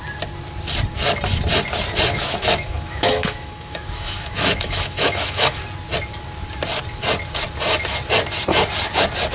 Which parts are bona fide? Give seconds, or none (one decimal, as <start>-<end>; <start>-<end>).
0.0-2.1; 5.6-9.3